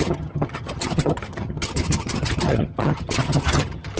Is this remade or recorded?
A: remade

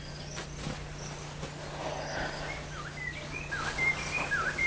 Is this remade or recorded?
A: recorded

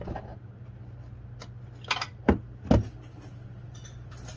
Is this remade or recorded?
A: recorded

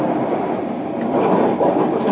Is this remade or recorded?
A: recorded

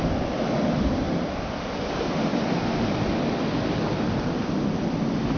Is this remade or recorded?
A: recorded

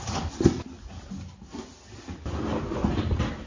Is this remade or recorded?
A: recorded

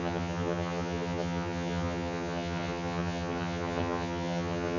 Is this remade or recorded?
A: remade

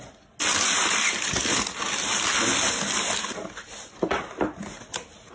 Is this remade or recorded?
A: recorded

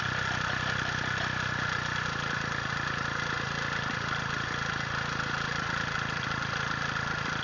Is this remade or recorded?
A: recorded